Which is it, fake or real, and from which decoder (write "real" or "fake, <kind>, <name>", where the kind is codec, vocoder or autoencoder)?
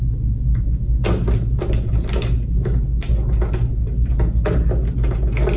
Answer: real